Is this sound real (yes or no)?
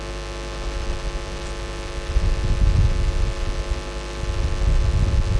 yes